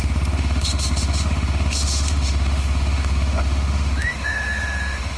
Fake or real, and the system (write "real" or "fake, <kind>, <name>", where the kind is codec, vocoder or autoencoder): fake, autoencoder, DAC-VAE